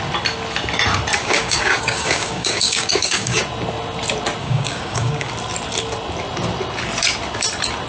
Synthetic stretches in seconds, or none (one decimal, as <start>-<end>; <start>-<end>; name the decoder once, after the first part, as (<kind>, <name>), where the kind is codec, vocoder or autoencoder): 1.2-3.4 (codec, DAC); 4.4-5.3